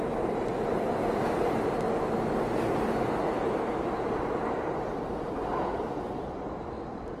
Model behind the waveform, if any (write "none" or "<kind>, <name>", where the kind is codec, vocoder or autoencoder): vocoder, BigVGAN v2